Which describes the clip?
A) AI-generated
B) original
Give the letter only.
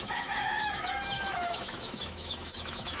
A